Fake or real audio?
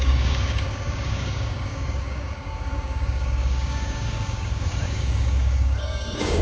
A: fake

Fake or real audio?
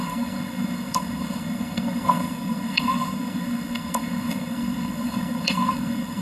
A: fake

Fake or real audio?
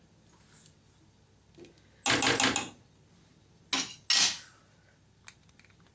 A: real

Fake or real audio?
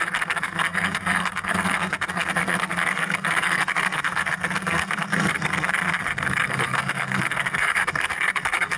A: fake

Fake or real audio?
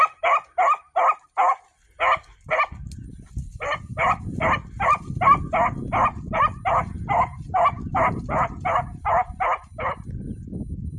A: real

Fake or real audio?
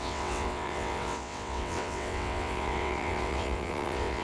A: fake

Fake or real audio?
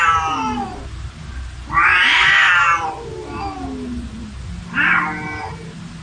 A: real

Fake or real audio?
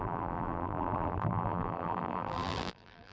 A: fake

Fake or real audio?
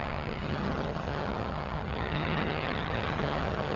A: fake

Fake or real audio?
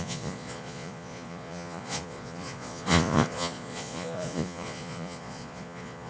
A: fake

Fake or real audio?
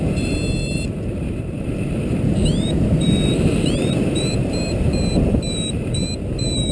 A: fake